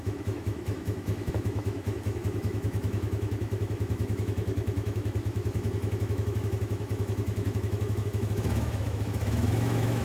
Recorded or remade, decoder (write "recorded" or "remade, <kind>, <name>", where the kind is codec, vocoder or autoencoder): remade, autoencoder, DAC-VAE